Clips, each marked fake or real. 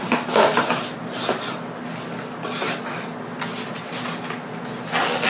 real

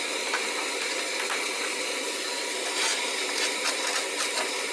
real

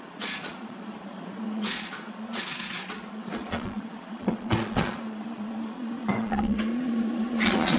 fake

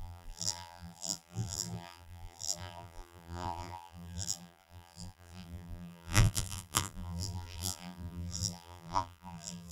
fake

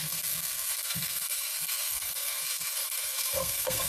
fake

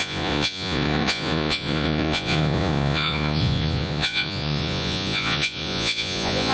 fake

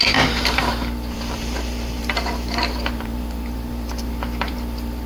fake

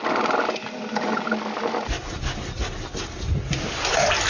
real